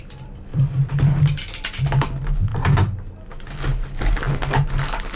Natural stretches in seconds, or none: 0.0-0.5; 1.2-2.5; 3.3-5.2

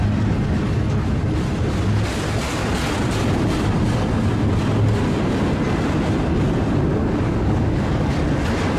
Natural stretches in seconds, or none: 0.0-7.0; 8.1-8.8